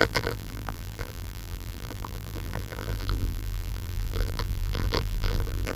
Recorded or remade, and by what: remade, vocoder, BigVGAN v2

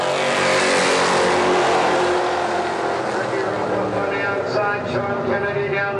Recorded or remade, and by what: recorded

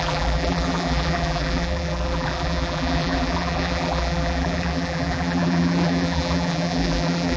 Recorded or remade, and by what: remade, vocoder, BigVGAN v2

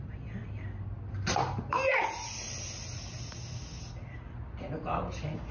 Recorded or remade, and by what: recorded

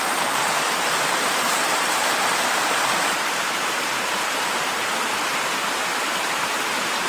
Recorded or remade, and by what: remade, vocoder, BigVGAN v2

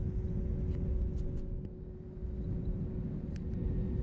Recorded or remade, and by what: recorded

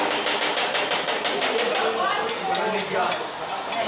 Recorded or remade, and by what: recorded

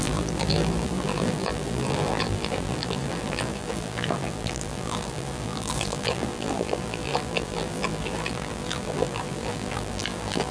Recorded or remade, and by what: remade, vocoder, BigVGAN v2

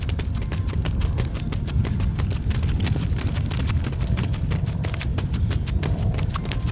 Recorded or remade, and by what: remade, vocoder, BigVGAN v2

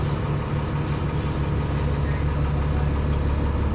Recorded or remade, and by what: recorded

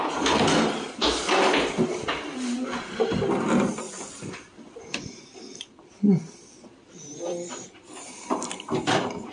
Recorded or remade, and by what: remade, vocoder, BigVGAN v2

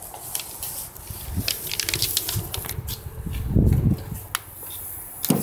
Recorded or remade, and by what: recorded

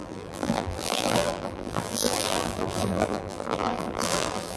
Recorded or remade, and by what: remade, vocoder, BigVGAN v2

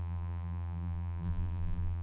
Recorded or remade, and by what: remade, vocoder, BigVGAN v2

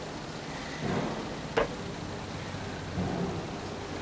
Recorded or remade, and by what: recorded